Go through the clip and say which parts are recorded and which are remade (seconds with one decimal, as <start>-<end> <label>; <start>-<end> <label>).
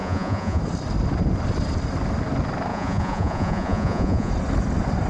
0.0-0.6 remade; 0.6-2.7 recorded; 2.7-4.3 remade; 4.3-5.1 recorded